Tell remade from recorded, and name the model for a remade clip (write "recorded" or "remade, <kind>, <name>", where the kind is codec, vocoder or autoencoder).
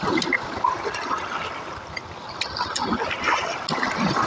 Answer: recorded